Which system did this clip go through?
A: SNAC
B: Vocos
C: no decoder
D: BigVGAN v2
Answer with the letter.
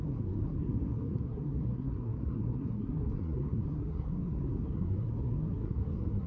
A